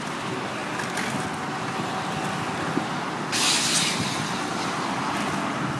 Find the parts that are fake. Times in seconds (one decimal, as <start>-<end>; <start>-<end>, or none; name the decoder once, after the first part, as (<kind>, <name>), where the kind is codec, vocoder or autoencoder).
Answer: none